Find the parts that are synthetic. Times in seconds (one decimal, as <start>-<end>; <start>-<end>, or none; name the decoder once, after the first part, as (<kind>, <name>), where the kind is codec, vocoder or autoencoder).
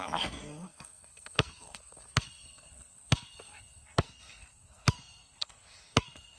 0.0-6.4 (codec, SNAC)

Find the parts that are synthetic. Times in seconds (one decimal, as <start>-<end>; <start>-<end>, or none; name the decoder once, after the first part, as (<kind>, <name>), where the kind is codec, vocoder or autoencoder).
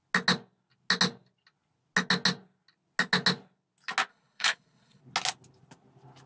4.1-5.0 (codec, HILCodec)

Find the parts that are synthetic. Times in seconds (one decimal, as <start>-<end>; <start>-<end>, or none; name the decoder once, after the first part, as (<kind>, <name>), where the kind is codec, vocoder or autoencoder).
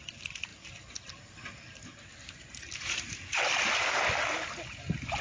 none